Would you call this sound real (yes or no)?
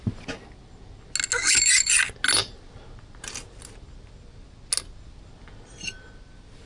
yes